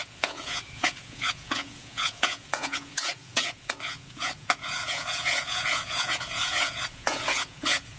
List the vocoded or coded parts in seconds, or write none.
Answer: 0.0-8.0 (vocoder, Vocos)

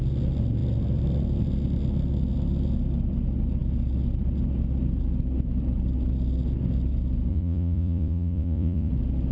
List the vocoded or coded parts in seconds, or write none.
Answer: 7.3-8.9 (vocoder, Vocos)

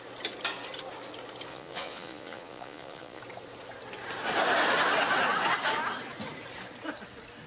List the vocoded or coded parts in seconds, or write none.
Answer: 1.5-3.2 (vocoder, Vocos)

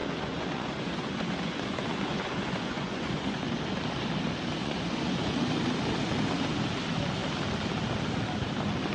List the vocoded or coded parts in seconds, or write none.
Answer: 0.0-3.4 (vocoder, Vocos); 4.6-5.4

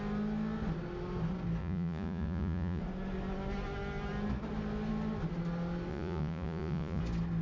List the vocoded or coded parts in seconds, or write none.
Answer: 1.6-2.8 (vocoder, Vocos); 5.9-7.0

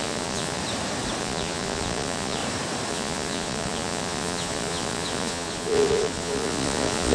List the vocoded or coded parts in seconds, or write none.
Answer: 0.0-0.6 (vocoder, Vocos); 1.2-2.4; 2.9-7.1